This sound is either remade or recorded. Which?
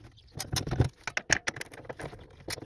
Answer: recorded